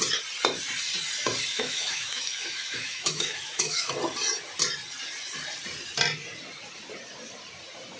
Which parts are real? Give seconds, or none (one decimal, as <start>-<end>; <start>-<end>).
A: 0.0-1.5; 3.9-8.0